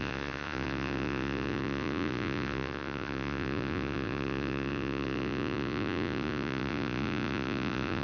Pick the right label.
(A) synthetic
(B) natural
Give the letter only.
A